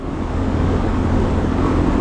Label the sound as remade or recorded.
remade